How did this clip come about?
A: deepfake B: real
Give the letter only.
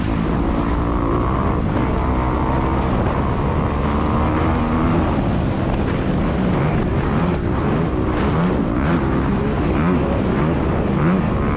B